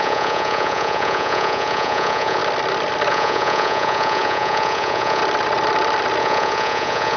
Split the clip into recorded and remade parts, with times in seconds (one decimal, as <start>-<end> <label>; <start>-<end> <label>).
0.0-2.4 remade; 2.4-3.1 recorded; 3.1-5.2 remade; 5.2-6.2 recorded; 6.2-7.2 remade

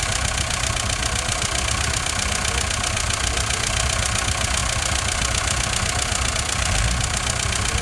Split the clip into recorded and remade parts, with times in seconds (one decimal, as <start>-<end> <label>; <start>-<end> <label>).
0.0-7.8 recorded

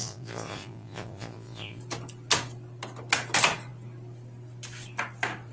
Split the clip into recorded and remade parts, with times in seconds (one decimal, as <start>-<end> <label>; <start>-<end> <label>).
0.0-1.8 remade; 1.8-5.5 recorded

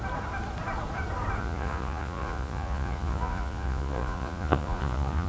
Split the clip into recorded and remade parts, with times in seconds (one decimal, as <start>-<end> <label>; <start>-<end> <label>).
0.0-1.4 recorded; 1.4-5.3 remade

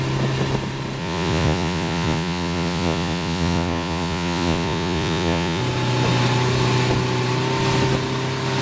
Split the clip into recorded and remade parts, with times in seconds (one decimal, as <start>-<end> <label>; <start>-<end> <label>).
0.0-1.0 recorded; 1.0-5.6 remade; 5.6-8.6 recorded

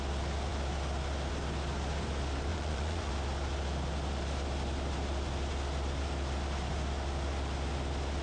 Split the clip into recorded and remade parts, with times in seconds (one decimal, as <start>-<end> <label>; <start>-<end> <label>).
0.0-2.5 recorded; 2.5-3.1 remade; 3.1-8.2 recorded